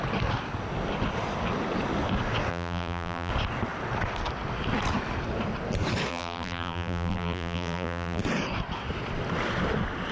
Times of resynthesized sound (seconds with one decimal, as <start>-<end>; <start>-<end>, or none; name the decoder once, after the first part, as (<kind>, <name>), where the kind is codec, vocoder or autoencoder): 2.5-3.3 (vocoder, BigVGAN v2); 6.1-8.2